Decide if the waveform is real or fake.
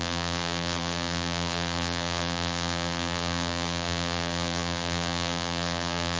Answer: fake